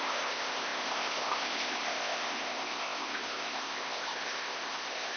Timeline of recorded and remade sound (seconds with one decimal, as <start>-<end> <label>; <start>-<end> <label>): 0.0-5.2 remade